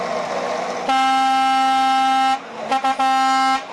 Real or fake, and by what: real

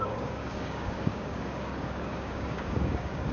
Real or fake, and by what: fake, codec, DAC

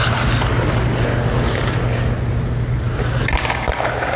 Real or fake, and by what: real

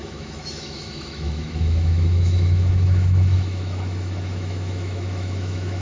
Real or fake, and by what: fake, autoencoder, DAC-VAE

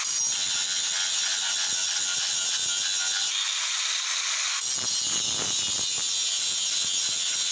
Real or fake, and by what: real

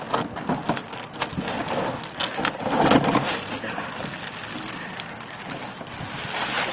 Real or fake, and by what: real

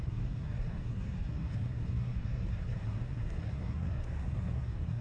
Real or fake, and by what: fake, codec, SNAC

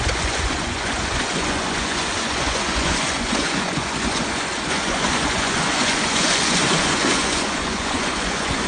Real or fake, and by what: fake, vocoder, Vocos